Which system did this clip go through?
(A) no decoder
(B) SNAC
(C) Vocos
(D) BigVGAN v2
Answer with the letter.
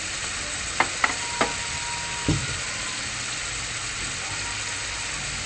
A